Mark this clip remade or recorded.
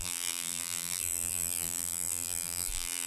remade